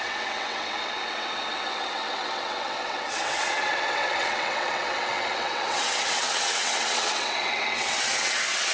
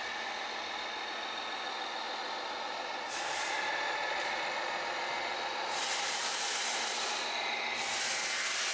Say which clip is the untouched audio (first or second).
second